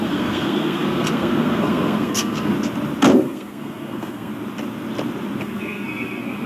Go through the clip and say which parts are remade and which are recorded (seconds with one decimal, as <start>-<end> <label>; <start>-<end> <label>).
0.0-2.5 remade; 2.5-3.1 recorded; 3.1-4.3 remade; 4.3-5.4 recorded; 5.4-6.5 remade